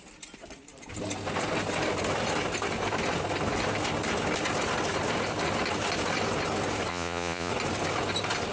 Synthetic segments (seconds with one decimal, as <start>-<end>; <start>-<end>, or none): 6.9-7.5